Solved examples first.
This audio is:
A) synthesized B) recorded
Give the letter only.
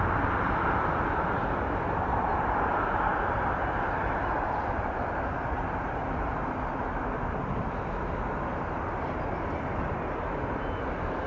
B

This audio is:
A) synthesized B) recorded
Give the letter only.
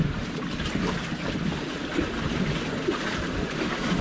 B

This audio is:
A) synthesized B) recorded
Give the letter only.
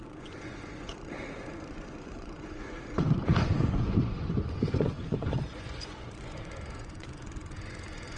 A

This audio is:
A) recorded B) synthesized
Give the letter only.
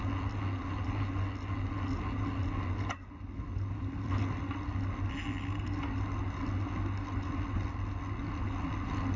A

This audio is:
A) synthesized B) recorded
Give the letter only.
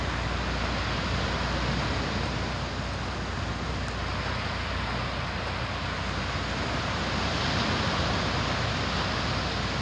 B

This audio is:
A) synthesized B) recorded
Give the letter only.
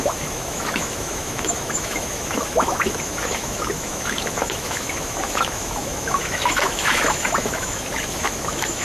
A